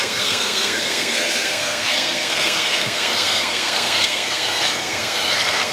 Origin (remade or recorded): remade